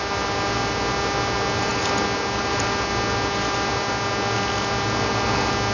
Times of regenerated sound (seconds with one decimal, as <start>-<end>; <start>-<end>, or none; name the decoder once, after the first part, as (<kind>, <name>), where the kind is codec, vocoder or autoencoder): none